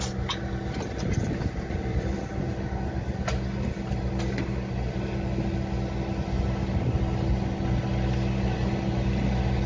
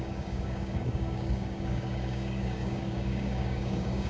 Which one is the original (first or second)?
first